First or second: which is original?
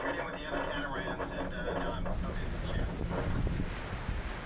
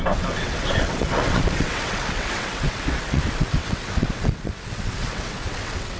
first